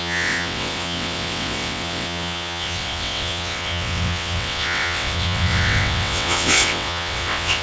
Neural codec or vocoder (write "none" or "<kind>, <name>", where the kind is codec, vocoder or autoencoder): vocoder, WaveNeXt